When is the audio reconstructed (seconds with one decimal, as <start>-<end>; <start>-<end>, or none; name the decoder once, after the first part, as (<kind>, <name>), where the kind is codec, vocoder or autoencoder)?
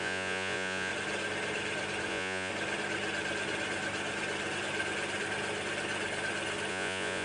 0.0-0.9 (vocoder, Vocos); 2.1-2.5; 6.7-7.2